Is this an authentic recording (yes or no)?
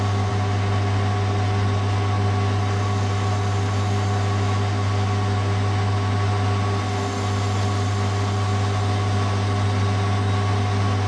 yes